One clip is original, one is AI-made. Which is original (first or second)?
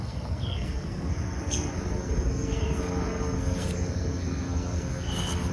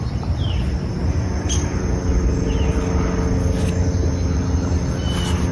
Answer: second